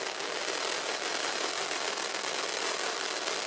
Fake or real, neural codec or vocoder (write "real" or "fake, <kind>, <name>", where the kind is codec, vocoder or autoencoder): real